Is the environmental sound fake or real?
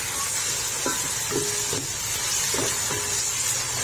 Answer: real